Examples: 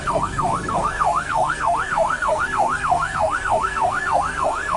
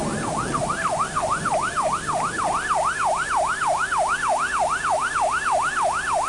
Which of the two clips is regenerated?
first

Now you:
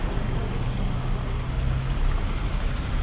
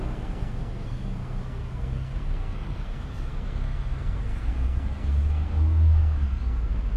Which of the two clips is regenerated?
second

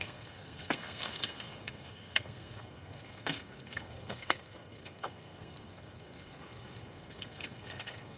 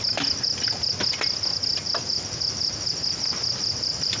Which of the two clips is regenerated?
first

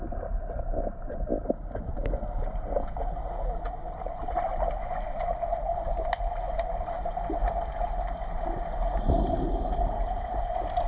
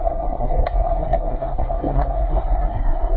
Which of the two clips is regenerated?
second